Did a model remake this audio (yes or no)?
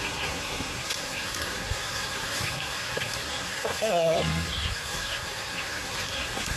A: yes